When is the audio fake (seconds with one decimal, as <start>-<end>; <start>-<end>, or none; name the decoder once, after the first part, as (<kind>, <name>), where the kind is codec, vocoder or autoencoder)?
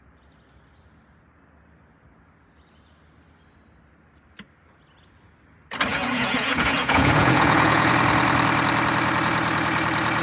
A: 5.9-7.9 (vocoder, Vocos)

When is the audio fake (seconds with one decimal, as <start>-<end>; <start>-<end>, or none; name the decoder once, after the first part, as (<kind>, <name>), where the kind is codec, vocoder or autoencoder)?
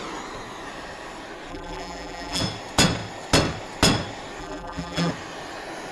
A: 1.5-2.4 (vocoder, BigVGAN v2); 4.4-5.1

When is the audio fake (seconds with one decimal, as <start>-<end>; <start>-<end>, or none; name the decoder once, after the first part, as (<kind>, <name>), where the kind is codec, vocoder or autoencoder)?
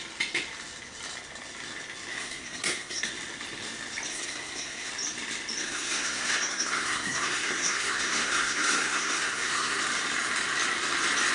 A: 2.1-3.1 (codec, SNAC); 4.1-4.9; 5.6-9.8